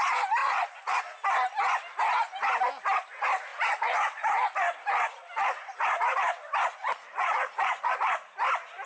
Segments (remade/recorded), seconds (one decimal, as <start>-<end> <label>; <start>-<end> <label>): 0.0-0.4 recorded; 0.4-1.0 remade; 1.0-6.8 recorded; 6.8-8.0 remade; 8.0-8.9 recorded